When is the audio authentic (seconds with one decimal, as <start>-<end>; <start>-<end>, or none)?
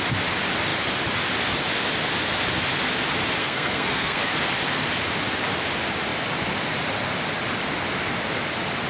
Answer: 0.0-3.4; 4.3-8.9